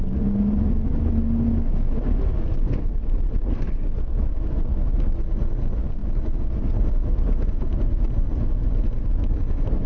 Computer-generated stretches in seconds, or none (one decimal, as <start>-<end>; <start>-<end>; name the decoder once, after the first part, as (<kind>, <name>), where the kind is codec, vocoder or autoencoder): none